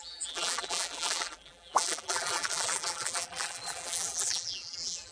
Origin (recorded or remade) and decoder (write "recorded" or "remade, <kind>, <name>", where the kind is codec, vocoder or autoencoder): remade, vocoder, BigVGAN v2